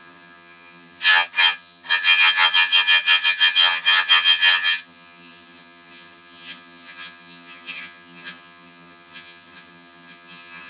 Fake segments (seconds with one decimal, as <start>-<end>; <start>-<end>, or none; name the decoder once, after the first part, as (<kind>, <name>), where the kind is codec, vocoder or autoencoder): 0.0-10.7 (vocoder, HiFi-GAN)